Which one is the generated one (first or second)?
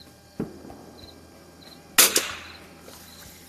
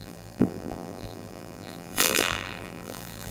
second